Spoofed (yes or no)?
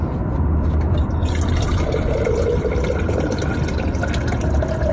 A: no